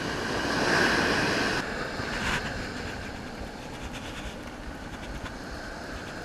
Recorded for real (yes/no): yes